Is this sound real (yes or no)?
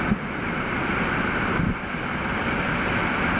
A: yes